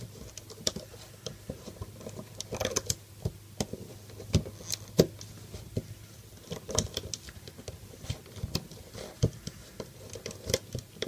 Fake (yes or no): no